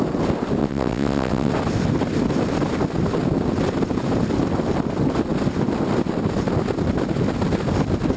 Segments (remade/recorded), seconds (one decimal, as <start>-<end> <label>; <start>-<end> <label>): 0.0-0.6 recorded; 0.6-1.5 remade; 1.5-8.2 recorded